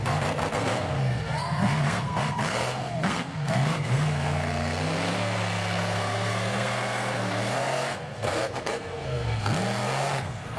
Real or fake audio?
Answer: fake